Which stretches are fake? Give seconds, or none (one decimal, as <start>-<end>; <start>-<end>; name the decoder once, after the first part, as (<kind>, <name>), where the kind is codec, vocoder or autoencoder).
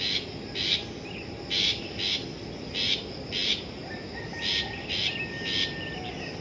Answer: none